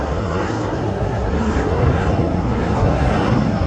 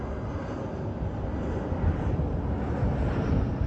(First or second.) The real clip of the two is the second